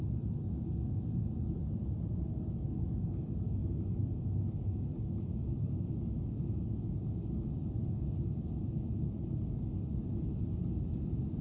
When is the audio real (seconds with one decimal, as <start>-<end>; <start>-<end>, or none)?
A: 0.0-11.4